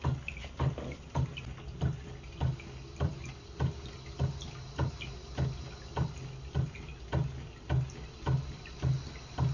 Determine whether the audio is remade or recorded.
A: recorded